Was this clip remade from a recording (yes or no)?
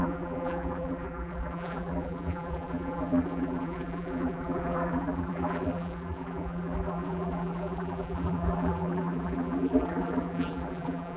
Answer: yes